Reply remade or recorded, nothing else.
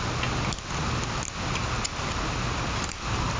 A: recorded